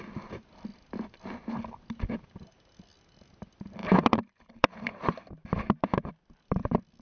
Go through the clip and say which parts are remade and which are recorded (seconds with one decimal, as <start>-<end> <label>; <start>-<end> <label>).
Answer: 0.0-3.8 recorded; 3.8-6.1 remade; 6.1-7.0 recorded